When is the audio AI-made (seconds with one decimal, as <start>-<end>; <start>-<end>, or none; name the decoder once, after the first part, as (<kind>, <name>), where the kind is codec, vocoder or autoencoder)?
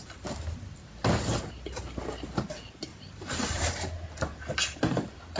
2.9-3.7 (vocoder, BigVGAN v2); 4.3-5.0